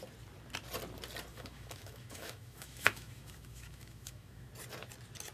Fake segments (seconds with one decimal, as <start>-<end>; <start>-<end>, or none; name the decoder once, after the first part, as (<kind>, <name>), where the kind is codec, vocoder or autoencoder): 1.3-4.5 (autoencoder, DAC-VAE)